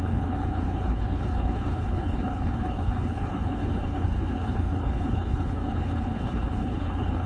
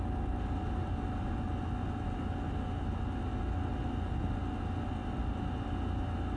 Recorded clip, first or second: second